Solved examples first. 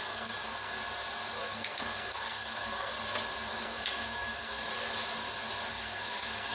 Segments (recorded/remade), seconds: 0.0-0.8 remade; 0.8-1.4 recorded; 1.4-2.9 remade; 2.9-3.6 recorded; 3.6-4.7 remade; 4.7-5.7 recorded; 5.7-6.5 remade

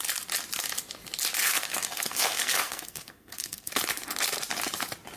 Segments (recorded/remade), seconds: 0.0-1.4 recorded; 1.4-3.7 remade; 3.7-5.2 recorded

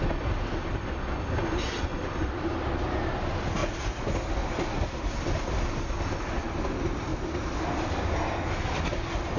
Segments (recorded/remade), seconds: 0.0-9.4 recorded